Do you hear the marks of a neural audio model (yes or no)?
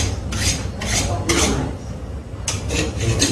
no